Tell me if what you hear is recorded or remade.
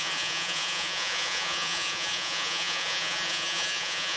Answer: remade